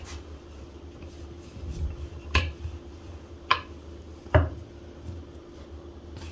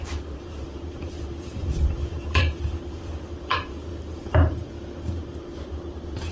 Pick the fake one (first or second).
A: second